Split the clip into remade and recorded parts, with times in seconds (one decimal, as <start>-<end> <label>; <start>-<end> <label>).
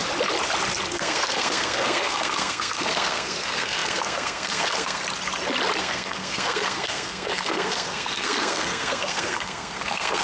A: 0.0-0.9 recorded; 0.9-5.0 remade; 5.0-5.8 recorded; 5.8-10.2 remade